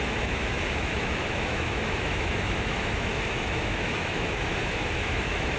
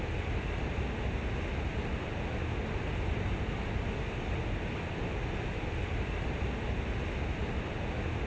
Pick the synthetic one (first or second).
first